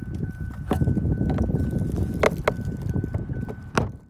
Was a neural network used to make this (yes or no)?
no